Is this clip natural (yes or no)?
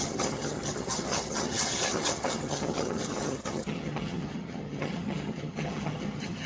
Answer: no